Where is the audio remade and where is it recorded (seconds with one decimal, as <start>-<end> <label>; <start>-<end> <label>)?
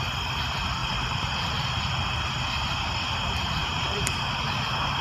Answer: 0.0-0.8 recorded; 0.8-1.5 remade; 1.5-3.6 recorded; 3.6-4.2 remade; 4.2-5.0 recorded